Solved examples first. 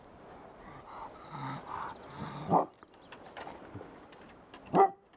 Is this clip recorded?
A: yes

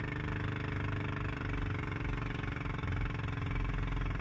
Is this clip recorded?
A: yes